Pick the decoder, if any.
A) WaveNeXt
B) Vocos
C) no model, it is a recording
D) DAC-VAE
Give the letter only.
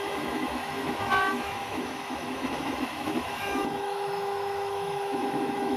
D